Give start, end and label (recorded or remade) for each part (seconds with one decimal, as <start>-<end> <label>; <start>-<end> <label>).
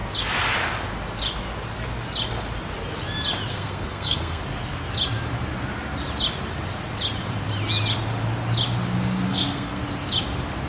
0.0-3.5 recorded; 3.5-4.4 remade; 4.4-9.3 recorded; 9.3-9.8 remade; 9.8-10.7 recorded